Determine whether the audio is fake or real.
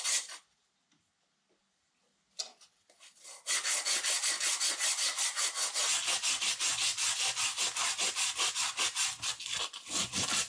real